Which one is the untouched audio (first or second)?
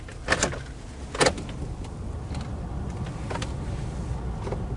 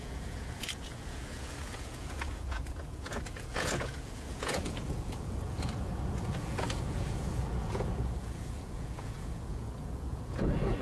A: first